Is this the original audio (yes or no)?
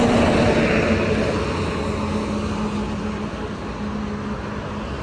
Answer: yes